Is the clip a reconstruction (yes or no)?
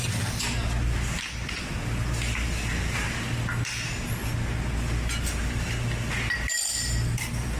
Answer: no